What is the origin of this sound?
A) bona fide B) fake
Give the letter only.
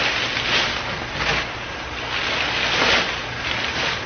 A